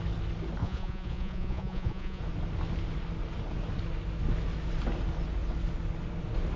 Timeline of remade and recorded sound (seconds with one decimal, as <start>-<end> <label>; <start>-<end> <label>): 0.0-0.6 recorded; 0.6-2.2 remade; 2.2-6.6 recorded